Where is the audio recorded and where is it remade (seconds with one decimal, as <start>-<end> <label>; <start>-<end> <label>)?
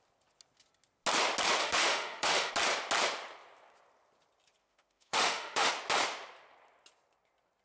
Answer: 0.0-1.6 recorded; 1.6-2.5 remade; 2.5-4.6 recorded; 4.6-5.7 remade; 5.7-7.6 recorded